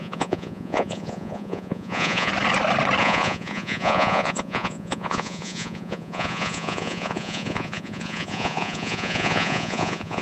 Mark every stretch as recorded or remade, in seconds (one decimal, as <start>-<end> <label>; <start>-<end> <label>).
0.0-2.3 remade; 2.3-3.0 recorded; 3.0-10.2 remade